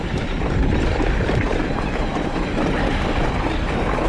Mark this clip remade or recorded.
remade